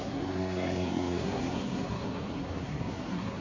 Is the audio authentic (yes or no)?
no